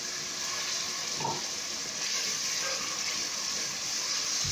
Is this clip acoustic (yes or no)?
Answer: yes